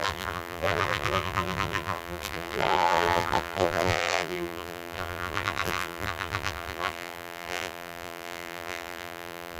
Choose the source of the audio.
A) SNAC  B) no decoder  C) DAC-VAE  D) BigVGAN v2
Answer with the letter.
D